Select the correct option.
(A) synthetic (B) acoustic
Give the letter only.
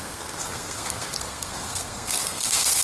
A